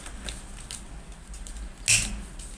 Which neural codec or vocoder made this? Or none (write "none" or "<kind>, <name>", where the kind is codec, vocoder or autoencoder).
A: none